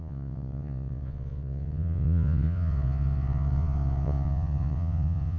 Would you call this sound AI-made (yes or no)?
yes